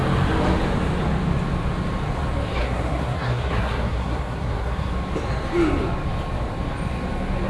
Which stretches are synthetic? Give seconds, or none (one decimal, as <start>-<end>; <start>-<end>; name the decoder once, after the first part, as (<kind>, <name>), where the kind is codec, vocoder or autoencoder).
2.6-4.9 (codec, SNAC)